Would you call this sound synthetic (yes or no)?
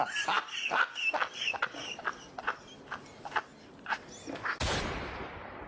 no